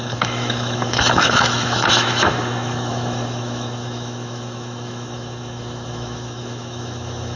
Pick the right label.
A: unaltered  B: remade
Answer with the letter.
B